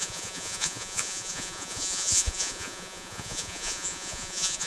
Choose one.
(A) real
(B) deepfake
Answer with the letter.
B